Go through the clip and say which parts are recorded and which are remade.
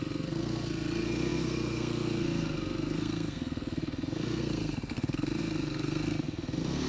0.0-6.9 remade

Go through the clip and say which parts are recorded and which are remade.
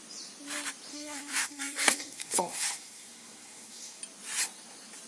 0.0-0.9 recorded; 0.9-4.0 remade; 4.0-5.1 recorded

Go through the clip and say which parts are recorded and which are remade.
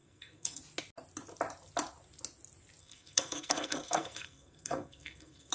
0.0-0.6 remade; 0.6-2.8 recorded; 2.8-5.5 remade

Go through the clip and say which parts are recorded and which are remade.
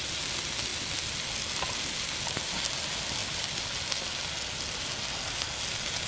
0.0-6.1 recorded